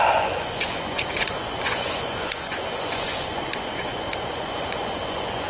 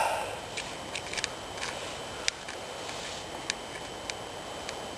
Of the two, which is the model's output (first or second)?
first